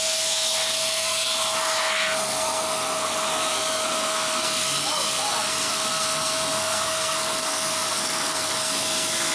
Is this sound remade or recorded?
remade